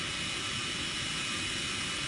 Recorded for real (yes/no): yes